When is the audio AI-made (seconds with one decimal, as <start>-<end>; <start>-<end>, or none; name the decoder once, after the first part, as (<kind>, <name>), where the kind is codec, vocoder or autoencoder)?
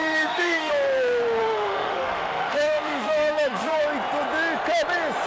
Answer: 0.0-0.7 (autoencoder, DAC-VAE); 1.4-3.8